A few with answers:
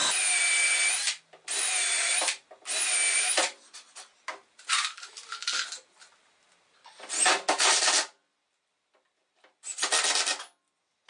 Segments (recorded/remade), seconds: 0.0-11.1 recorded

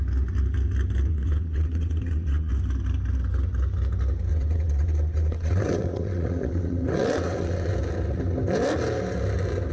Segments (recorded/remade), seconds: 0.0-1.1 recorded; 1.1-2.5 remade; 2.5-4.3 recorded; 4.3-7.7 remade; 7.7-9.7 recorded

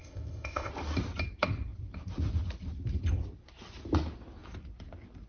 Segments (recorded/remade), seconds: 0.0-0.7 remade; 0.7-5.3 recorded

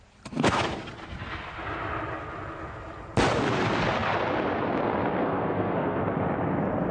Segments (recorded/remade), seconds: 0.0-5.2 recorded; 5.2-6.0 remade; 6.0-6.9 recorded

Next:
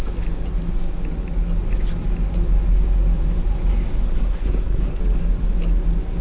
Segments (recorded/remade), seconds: 0.0-4.1 recorded; 4.1-5.0 remade; 5.0-6.2 recorded

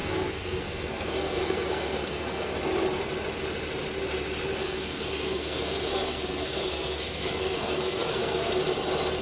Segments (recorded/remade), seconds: 0.0-2.5 remade; 2.5-4.6 recorded; 4.6-8.5 remade; 8.5-9.2 recorded